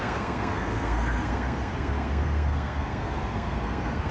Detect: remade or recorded remade